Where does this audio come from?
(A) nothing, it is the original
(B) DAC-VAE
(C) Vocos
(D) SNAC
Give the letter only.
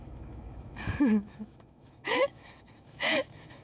B